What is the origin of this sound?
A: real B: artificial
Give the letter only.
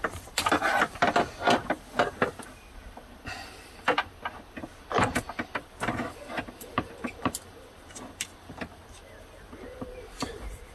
B